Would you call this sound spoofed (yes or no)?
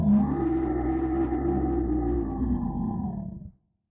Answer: no